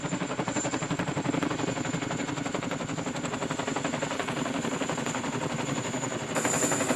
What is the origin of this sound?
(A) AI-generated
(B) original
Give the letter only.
B